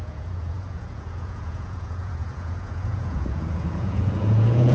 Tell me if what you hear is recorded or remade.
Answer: remade